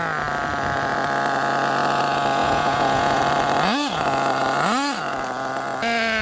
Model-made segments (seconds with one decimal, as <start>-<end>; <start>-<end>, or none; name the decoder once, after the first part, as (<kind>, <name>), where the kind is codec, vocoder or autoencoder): 2.4-3.2 (vocoder, Vocos)